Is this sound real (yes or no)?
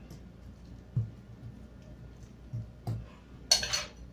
yes